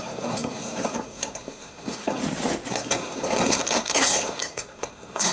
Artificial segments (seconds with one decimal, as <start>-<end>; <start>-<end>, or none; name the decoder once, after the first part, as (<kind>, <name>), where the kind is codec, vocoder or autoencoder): 0.0-2.2 (codec, SNAC); 2.7-5.3